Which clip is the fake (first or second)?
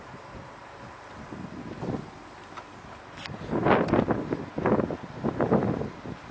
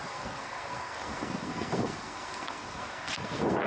second